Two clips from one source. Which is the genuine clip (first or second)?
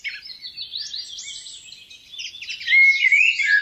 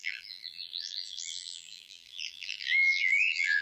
first